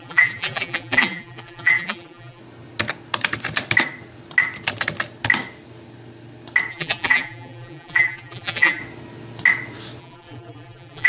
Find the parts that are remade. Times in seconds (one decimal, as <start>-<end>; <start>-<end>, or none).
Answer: 0.0-2.4; 6.7-8.8; 10.0-11.1